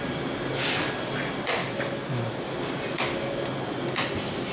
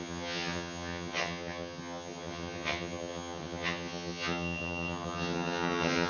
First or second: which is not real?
second